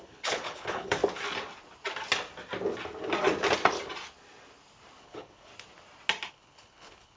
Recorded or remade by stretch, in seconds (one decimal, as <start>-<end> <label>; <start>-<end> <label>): 0.0-1.0 remade; 1.0-5.0 recorded; 5.0-5.5 remade; 5.5-6.3 recorded; 6.3-7.2 remade